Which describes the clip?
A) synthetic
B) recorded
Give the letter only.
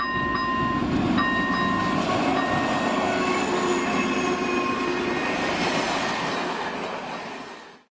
B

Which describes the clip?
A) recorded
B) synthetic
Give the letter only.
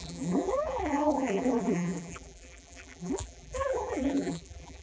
B